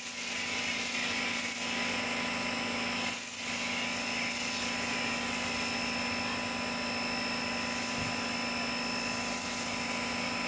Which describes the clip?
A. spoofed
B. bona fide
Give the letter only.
B